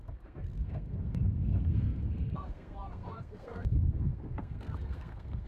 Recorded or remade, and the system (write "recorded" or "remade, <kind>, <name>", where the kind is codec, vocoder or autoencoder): remade, codec, SNAC